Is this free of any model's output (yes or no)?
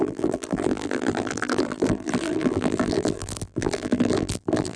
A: no